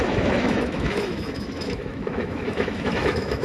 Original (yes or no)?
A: no